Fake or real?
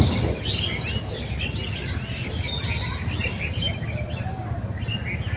real